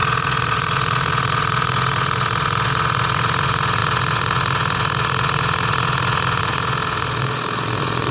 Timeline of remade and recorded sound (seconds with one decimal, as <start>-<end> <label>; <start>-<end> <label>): 0.0-8.1 remade